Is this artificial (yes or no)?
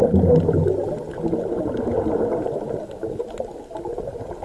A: no